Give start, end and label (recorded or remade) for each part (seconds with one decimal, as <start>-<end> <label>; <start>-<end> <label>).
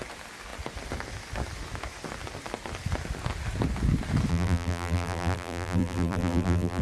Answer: 0.0-4.3 recorded; 4.3-6.8 remade